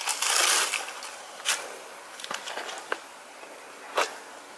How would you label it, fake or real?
real